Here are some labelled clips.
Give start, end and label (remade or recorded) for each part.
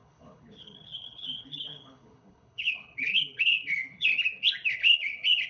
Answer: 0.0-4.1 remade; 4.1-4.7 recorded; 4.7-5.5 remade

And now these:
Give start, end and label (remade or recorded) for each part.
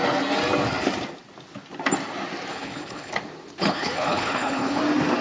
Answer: 0.0-2.5 recorded; 2.5-3.1 remade; 3.1-3.6 recorded; 3.6-4.8 remade; 4.8-5.2 recorded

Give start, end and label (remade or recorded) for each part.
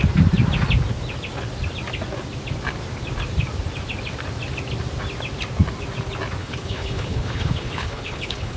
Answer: 0.0-6.4 recorded; 6.4-8.6 remade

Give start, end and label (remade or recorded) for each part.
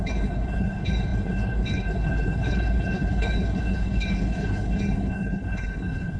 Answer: 0.0-6.2 remade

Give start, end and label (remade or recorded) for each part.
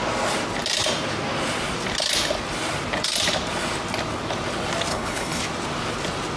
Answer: 0.0-4.9 recorded; 4.9-5.4 remade; 5.4-6.4 recorded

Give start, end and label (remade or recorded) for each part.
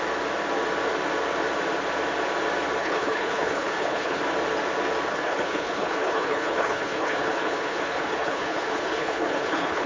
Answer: 0.0-2.8 recorded; 2.8-4.2 remade; 4.2-5.1 recorded; 5.1-9.9 remade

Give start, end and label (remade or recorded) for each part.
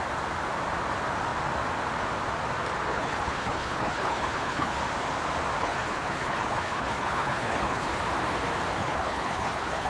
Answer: 0.0-2.9 recorded; 2.9-4.8 remade; 4.8-5.6 recorded; 5.6-8.0 remade; 8.0-8.8 recorded; 8.8-9.9 remade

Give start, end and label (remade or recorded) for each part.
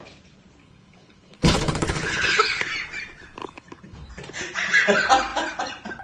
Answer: 0.0-0.6 recorded; 0.6-2.7 remade; 2.7-3.4 recorded; 3.4-4.1 remade; 4.1-6.0 recorded